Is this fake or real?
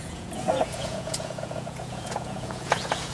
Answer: fake